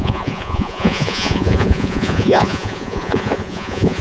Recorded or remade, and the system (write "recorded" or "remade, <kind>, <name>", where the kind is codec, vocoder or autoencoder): remade, vocoder, Vocos